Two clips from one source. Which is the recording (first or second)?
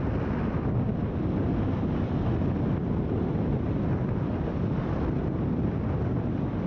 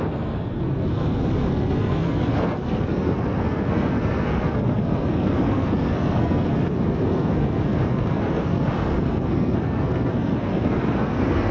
first